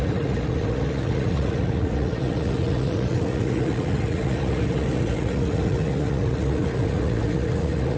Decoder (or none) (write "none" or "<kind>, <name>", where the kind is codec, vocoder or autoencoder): vocoder, Vocos